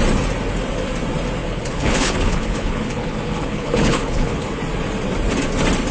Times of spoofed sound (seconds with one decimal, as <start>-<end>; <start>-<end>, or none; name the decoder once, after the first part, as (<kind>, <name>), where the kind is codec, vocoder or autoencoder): 1.4-4.6 (codec, HILCodec)